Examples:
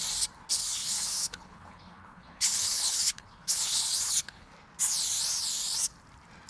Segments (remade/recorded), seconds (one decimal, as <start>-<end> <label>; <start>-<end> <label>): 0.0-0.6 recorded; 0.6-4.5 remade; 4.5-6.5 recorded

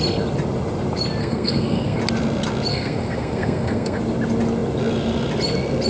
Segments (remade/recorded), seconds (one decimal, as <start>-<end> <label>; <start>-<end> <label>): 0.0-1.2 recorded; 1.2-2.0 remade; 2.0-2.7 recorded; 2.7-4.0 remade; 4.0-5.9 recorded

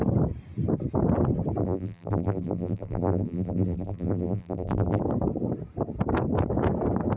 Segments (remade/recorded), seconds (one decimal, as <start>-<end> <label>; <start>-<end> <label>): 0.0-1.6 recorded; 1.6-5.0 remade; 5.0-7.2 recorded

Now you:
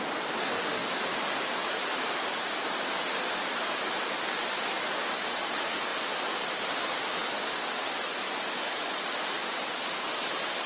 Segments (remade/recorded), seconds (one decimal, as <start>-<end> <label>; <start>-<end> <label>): 0.0-0.8 recorded; 0.8-4.7 remade; 4.7-5.9 recorded; 5.9-10.7 remade